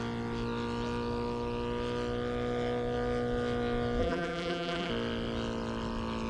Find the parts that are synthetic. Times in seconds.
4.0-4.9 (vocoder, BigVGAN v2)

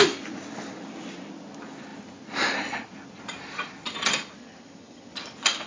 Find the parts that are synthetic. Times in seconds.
4.4-5.1 (vocoder, HiFi-GAN)

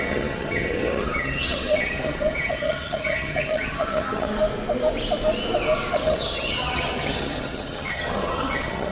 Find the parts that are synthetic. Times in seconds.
0.0-4.3 (vocoder, HiFi-GAN); 5.9-8.9

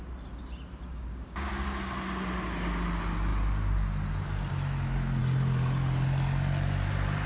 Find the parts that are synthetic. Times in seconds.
0.9-1.5 (codec, DAC)

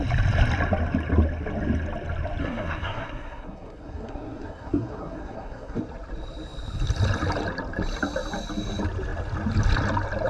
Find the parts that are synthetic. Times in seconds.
2.4-5.8 (codec, SNAC)

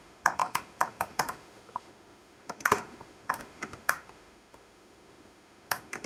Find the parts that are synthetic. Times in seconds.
0.0-6.1 (autoencoder, DAC-VAE)

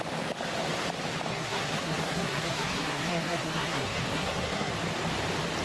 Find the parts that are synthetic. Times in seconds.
1.3-4.7 (codec, SNAC)

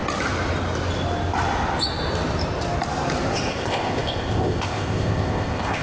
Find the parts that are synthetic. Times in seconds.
3.5-5.8 (codec, ZipCodec)